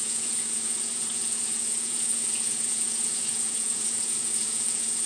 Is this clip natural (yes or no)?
no